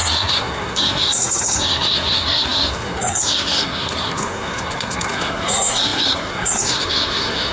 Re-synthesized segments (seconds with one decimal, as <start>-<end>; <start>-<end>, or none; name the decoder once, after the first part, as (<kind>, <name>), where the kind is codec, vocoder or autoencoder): 0.0-7.5 (codec, SNAC)